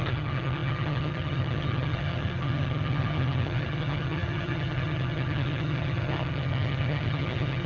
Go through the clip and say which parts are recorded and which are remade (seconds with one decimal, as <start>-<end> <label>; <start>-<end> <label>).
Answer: 0.0-7.7 remade